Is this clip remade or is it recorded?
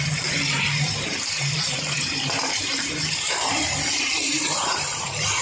remade